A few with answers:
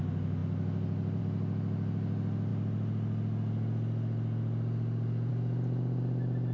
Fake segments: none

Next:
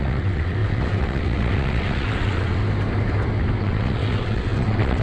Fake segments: 0.0-2.6 (vocoder, WaveNeXt); 3.6-5.0

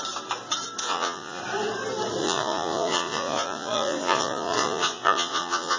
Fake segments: 0.8-1.4 (vocoder, Vocos); 2.2-5.8

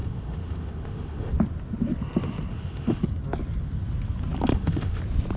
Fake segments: 0.0-1.3 (autoencoder, DAC-VAE); 2.5-3.0; 4.5-5.0

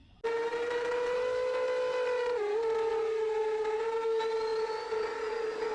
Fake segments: none

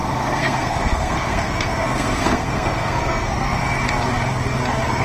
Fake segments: 0.0-3.6 (codec, SNAC)